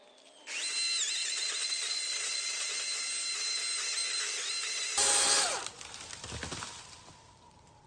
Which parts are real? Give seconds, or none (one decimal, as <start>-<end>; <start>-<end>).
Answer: 0.0-1.2; 2.7-7.9